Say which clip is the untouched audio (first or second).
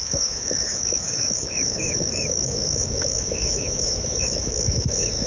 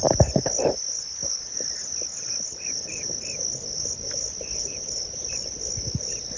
second